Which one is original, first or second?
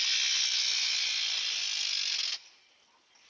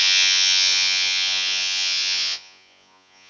first